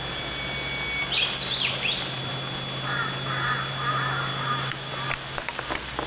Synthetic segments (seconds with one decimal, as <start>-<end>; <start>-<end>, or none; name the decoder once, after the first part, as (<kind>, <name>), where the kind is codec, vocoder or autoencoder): 4.3-4.9 (autoencoder, DAC-VAE)